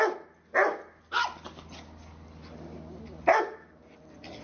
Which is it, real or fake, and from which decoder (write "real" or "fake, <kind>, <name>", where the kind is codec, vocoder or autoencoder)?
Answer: real